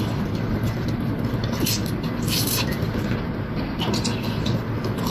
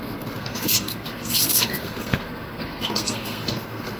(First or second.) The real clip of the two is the first